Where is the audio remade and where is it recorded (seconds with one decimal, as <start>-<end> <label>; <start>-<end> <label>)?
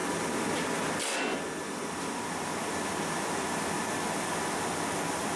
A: 0.0-5.4 recorded